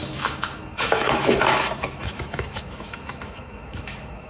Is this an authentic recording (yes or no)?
no